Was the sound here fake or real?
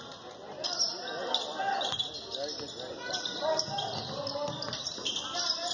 real